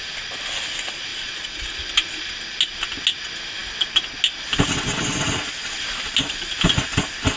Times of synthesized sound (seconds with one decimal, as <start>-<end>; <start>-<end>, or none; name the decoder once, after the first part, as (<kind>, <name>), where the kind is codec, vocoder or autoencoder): 1.1-1.8 (vocoder, Vocos)